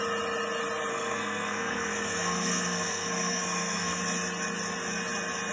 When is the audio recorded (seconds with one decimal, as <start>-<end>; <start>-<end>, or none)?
0.0-0.9; 4.0-5.5